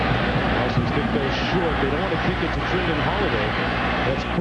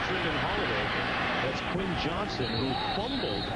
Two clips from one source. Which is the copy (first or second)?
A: second